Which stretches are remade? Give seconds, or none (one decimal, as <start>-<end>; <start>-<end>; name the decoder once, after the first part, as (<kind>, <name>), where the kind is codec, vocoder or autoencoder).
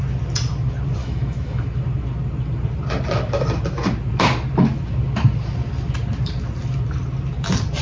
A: 1.0-1.6 (autoencoder, DAC-VAE)